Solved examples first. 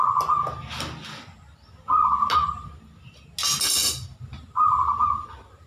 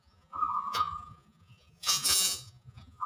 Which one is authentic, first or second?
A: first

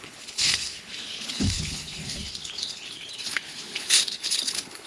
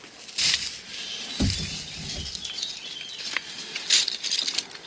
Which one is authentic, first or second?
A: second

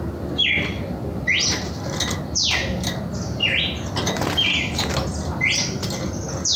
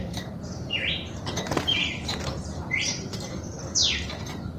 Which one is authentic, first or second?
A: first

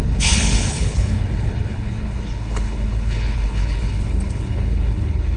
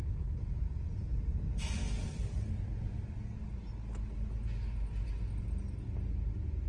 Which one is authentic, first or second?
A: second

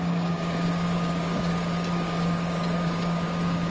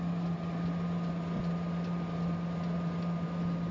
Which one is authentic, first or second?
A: second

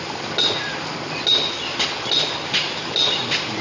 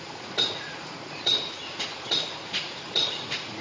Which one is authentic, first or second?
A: first